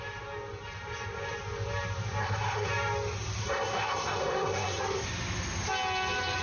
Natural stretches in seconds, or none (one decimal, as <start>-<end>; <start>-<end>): 0.0-2.2; 2.7-3.4; 4.8-6.4